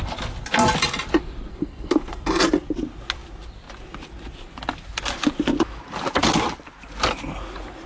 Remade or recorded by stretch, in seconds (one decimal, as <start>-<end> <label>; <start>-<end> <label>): 0.0-1.5 recorded; 1.5-2.4 remade; 2.4-7.9 recorded